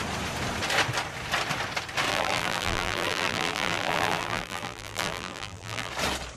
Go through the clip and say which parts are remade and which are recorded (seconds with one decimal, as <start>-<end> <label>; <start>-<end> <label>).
0.0-2.1 recorded; 2.1-5.9 remade; 5.9-6.4 recorded